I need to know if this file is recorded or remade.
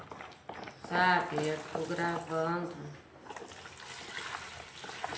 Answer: recorded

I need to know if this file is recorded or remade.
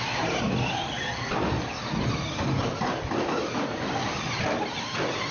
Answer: recorded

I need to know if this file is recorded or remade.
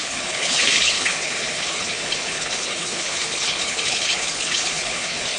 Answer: remade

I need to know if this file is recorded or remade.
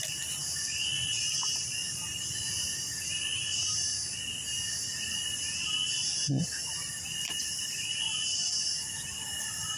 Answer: remade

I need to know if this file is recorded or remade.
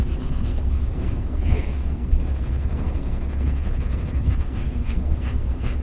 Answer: remade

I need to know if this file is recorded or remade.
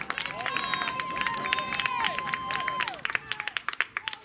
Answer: recorded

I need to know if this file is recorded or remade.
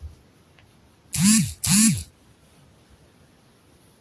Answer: recorded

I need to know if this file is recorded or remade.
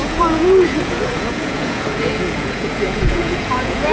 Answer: remade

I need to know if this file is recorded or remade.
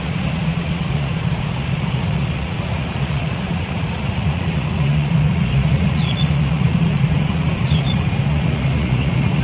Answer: remade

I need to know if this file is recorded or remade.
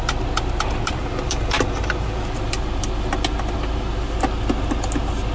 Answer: recorded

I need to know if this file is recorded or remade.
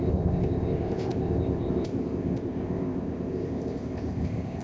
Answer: remade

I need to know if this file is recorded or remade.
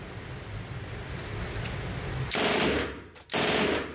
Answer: recorded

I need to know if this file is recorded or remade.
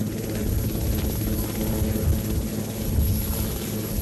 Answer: recorded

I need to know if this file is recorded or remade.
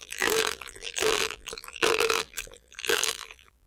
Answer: remade